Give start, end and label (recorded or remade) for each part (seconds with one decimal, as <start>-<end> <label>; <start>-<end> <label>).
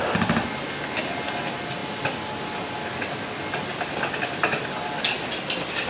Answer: 0.0-5.9 recorded